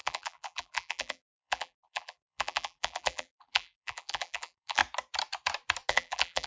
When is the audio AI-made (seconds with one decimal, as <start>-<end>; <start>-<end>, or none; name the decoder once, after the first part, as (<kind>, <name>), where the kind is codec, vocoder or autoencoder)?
0.0-4.8 (vocoder, BigVGAN v2); 5.9-6.5

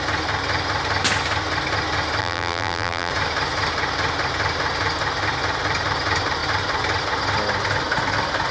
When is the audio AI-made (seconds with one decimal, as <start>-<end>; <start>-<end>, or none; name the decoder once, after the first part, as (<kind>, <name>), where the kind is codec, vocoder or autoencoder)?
2.2-3.1 (vocoder, BigVGAN v2)

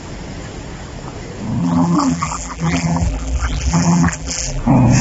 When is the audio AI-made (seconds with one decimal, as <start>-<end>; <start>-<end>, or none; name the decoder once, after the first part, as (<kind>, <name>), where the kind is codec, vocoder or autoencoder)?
1.6-4.6 (vocoder, BigVGAN v2)

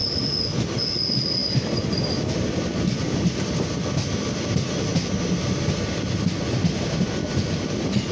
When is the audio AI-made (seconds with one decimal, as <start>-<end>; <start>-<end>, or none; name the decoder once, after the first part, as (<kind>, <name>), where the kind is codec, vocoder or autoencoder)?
1.4-3.4 (vocoder, BigVGAN v2)